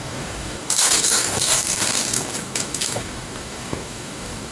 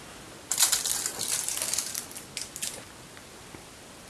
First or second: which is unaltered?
second